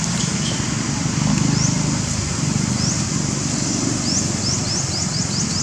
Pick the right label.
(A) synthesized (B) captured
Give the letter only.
B